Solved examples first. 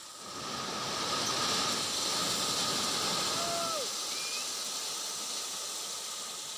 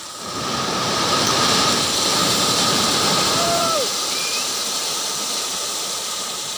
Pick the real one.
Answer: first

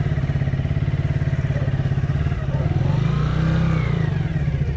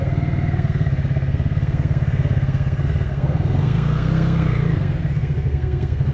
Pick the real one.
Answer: first